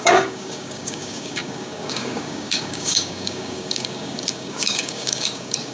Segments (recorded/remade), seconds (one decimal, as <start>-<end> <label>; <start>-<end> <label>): 0.0-5.7 remade